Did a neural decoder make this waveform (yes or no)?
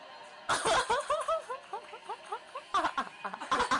no